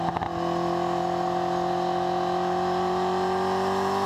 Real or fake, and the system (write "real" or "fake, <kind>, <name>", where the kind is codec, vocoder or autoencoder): real